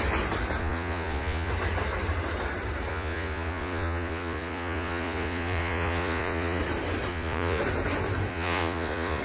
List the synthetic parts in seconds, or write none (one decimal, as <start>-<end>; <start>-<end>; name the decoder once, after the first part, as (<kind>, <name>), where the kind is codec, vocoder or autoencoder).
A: 0.6-1.5 (vocoder, Vocos); 2.9-6.6; 7.1-7.6; 8.3-9.2